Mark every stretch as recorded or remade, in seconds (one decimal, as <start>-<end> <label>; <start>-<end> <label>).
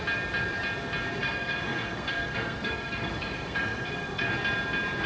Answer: 0.0-1.2 recorded; 1.2-4.3 remade; 4.3-5.1 recorded